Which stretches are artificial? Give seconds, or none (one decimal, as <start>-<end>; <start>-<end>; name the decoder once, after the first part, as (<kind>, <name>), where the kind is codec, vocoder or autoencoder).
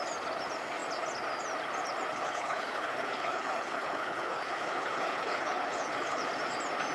2.1-6.2 (codec, HILCodec)